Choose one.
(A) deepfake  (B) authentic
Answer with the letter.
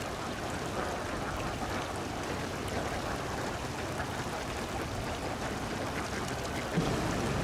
B